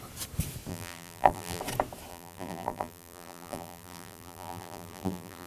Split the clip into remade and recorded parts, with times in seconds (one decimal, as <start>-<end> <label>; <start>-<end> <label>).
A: 0.0-0.7 recorded; 0.7-1.6 remade; 1.6-2.1 recorded; 2.1-5.5 remade